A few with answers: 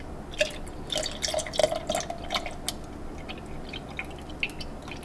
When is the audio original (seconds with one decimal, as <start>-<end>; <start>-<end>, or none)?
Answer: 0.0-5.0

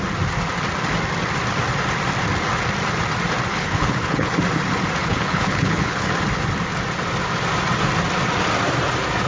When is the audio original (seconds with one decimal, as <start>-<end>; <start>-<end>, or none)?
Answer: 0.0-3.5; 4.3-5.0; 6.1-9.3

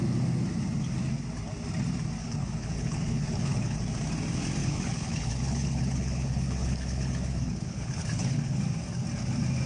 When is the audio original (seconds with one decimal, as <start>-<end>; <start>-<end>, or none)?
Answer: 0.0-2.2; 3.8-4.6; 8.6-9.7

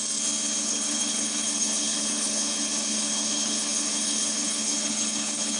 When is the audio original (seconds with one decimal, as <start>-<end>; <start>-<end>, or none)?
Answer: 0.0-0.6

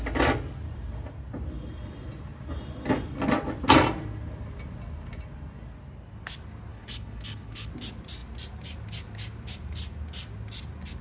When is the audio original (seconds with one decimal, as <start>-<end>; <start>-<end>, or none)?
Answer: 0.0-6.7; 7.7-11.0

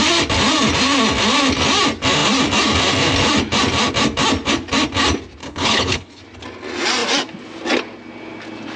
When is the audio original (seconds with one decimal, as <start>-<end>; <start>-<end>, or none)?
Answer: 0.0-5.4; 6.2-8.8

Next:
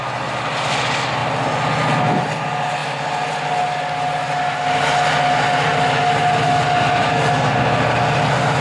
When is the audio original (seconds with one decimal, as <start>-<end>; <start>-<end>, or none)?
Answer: 0.0-8.6